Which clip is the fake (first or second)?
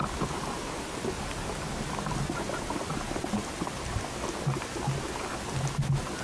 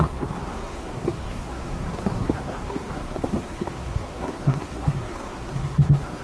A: second